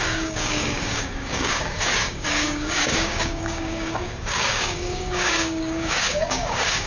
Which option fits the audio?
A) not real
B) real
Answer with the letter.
A